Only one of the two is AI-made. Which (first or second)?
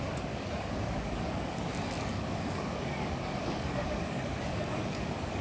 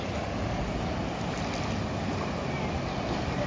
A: first